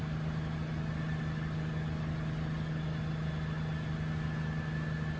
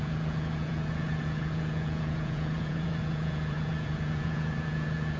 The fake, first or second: second